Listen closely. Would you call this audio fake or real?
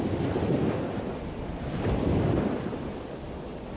real